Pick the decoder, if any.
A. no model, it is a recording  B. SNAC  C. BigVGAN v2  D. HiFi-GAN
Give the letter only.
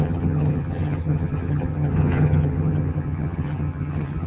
D